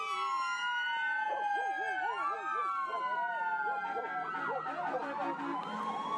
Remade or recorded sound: recorded